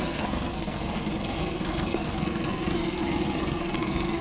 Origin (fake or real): fake